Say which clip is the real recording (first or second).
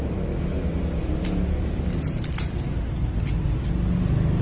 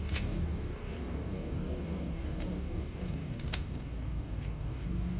first